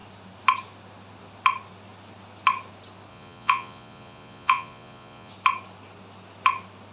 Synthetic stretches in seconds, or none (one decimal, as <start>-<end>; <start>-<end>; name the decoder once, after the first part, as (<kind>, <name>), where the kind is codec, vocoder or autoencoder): 3.1-5.3 (vocoder, Vocos)